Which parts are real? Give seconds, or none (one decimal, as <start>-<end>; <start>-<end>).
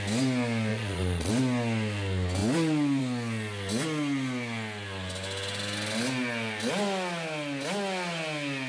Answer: 0.0-0.7; 1.3-8.7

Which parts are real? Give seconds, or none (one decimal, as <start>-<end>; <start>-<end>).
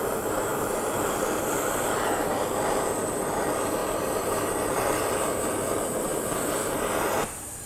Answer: 0.0-7.7